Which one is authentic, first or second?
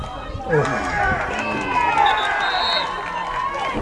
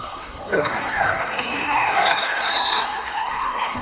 first